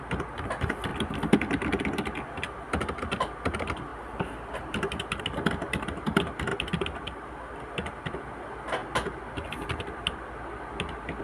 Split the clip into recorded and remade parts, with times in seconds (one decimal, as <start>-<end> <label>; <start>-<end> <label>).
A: 0.0-3.9 recorded; 3.9-5.2 remade; 5.2-6.5 recorded; 6.5-7.1 remade; 7.1-8.8 recorded; 8.8-11.2 remade